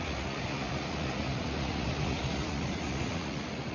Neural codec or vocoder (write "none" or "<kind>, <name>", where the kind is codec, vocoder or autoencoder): vocoder, Vocos